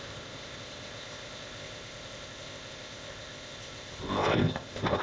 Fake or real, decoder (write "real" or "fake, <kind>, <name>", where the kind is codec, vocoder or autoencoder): fake, codec, ZipCodec